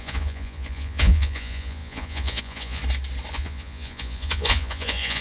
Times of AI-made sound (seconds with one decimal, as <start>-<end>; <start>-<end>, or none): 0.0-2.8; 3.3-5.2